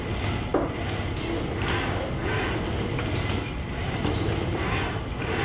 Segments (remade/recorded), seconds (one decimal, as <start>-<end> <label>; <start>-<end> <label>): 0.0-5.4 recorded